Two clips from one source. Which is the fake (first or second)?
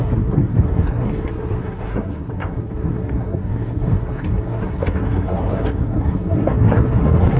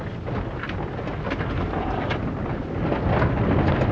first